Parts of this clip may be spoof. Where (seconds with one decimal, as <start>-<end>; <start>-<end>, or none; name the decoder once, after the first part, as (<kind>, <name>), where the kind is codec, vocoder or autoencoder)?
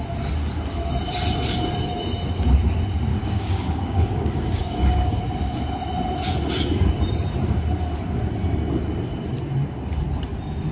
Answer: 3.1-5.2 (codec, DAC)